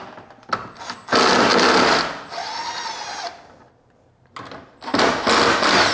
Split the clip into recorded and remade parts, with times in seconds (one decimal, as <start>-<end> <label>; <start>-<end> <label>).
0.0-5.9 recorded